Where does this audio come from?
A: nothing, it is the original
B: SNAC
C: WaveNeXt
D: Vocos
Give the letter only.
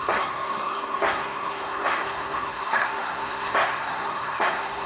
B